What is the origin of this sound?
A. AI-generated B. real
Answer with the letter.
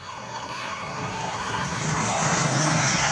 A